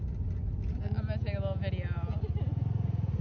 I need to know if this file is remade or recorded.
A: recorded